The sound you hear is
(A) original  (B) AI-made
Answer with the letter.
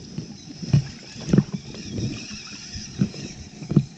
B